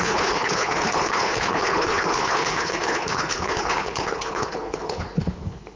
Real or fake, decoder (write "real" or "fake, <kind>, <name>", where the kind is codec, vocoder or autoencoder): fake, codec, HILCodec